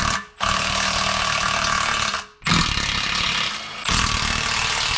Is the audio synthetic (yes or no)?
no